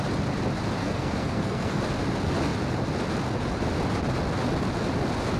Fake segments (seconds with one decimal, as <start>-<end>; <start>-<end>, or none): 0.8-1.8